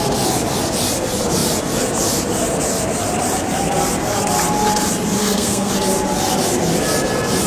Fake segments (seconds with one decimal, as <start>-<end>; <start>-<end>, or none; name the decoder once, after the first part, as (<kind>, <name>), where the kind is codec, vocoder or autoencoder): 5.2-5.7 (codec, SNAC)